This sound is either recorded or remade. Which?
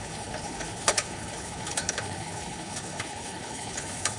remade